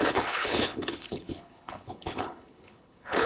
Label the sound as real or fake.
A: fake